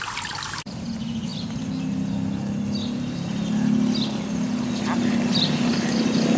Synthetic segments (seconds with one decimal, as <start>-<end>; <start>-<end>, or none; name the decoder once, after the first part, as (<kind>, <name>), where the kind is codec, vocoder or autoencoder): none